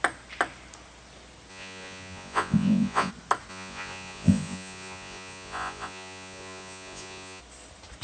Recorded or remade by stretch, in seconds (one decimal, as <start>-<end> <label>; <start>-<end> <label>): 0.0-1.5 recorded; 1.5-3.1 remade; 3.1-3.5 recorded; 3.5-7.4 remade; 7.4-8.0 recorded